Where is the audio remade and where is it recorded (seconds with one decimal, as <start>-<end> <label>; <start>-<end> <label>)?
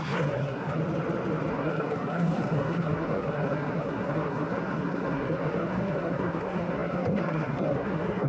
0.0-0.8 remade; 0.8-1.5 recorded; 1.5-8.3 remade